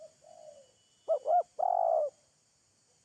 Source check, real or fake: real